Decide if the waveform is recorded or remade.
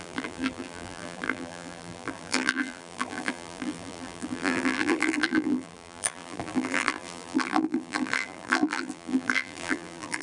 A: remade